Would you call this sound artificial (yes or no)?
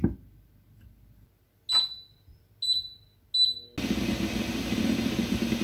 no